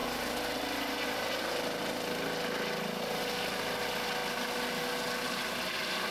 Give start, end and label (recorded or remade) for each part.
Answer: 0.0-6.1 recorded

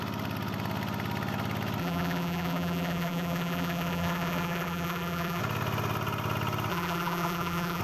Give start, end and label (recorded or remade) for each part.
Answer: 0.0-1.8 recorded; 1.8-5.4 remade; 5.4-6.7 recorded; 6.7-7.8 remade

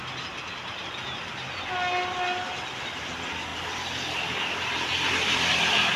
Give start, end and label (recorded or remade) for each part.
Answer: 0.0-6.0 recorded